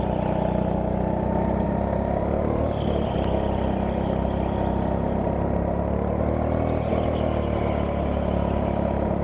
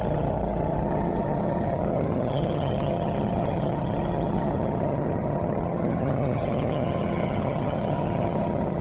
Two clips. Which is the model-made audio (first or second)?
second